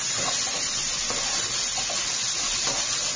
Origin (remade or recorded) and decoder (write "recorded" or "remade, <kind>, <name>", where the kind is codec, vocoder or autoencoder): recorded